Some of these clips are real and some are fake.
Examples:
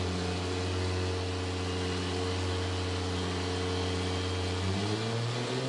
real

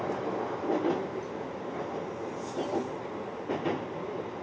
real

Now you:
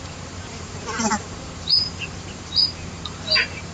fake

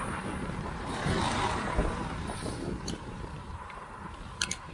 fake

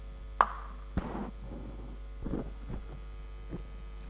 real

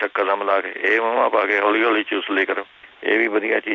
real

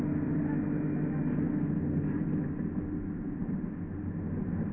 real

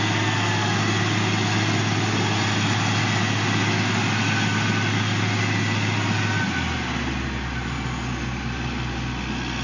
real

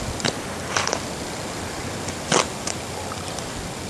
fake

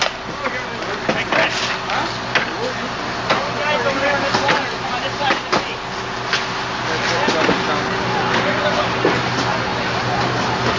real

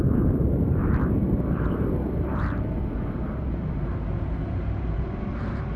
fake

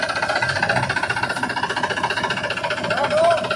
real